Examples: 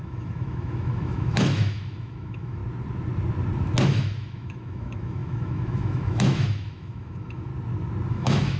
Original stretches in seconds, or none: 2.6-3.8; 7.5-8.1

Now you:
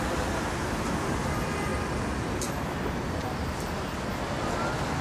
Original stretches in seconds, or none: 0.0-5.0

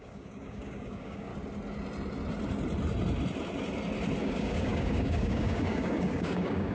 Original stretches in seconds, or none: 1.3-4.2